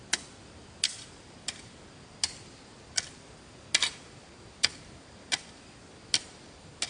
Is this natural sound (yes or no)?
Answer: yes